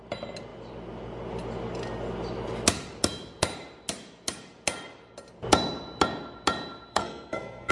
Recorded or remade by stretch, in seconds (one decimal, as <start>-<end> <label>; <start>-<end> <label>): 0.0-6.9 recorded; 6.9-7.7 remade